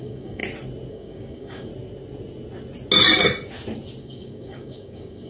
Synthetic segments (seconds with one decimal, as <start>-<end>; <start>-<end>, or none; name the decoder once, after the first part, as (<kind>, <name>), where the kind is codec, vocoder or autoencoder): 0.0-0.4 (codec, DAC); 0.9-1.7; 4.0-5.3